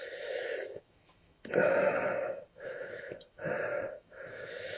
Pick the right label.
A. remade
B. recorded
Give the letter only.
A